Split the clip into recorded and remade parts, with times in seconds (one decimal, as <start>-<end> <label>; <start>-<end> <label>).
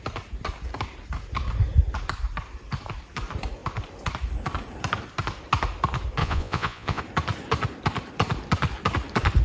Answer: 0.0-6.2 recorded; 6.2-7.0 remade; 7.0-9.4 recorded